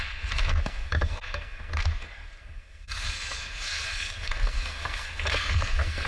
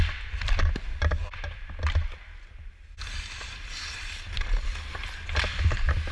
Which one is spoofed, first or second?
first